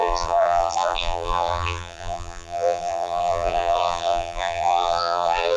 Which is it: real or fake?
fake